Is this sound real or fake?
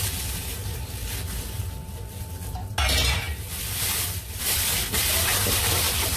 real